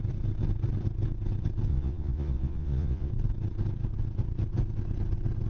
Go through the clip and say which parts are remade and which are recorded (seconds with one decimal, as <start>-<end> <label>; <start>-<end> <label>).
0.0-1.7 recorded; 1.7-3.1 remade; 3.1-5.5 recorded